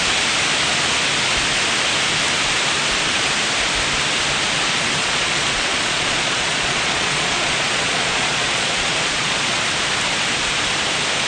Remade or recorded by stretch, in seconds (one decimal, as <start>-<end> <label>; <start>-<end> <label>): 0.0-5.0 recorded; 5.0-9.6 remade; 9.6-11.3 recorded